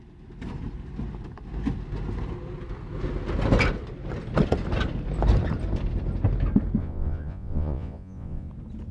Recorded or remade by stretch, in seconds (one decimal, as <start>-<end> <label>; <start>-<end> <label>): 0.0-6.8 recorded; 6.8-8.5 remade; 8.5-8.9 recorded